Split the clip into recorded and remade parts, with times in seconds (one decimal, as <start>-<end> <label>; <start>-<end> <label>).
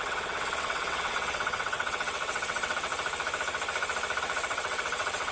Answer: 0.0-2.9 remade; 2.9-4.2 recorded; 4.2-5.3 remade